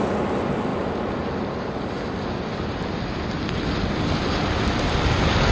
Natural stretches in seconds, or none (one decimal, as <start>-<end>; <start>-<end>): 0.0-5.5